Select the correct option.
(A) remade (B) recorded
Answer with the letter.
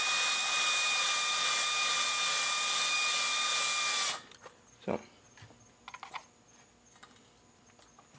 B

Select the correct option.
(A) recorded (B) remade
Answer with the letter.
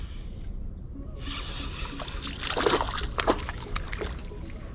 A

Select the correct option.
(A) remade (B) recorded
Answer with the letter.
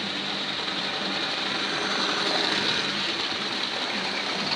B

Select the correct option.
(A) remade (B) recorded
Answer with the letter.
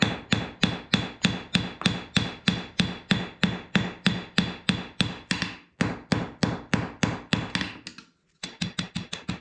B